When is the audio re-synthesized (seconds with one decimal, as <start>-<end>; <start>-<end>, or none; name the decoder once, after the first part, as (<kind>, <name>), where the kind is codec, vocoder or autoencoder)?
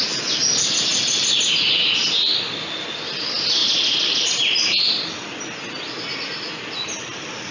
2.0-2.9 (vocoder, BigVGAN v2)